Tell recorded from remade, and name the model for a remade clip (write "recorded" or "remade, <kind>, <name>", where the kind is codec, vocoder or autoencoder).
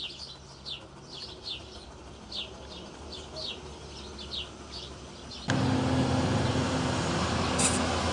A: recorded